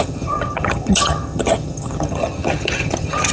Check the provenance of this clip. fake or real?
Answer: fake